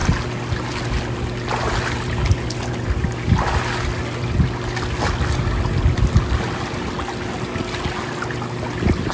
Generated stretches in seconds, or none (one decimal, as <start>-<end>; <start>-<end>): none